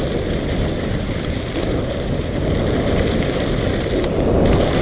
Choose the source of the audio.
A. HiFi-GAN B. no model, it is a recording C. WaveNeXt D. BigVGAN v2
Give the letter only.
B